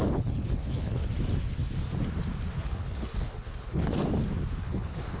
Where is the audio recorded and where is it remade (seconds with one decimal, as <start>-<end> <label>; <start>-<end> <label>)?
0.0-1.1 remade; 1.1-2.6 recorded; 2.6-4.0 remade; 4.0-4.6 recorded; 4.6-5.2 remade